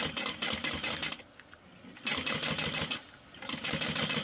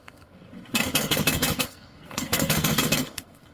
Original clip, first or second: first